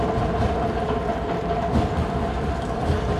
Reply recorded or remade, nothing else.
recorded